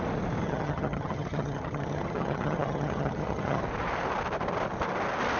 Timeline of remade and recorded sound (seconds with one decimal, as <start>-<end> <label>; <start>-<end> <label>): 0.0-0.4 recorded; 0.4-3.6 remade; 3.6-5.4 recorded